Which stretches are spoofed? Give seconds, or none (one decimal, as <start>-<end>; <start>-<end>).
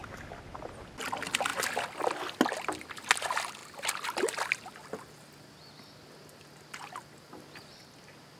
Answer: none